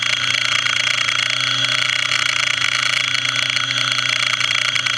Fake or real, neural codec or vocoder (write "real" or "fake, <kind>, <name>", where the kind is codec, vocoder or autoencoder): real